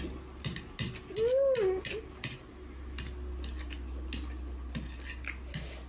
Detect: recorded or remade recorded